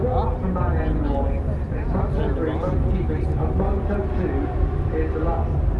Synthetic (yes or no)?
no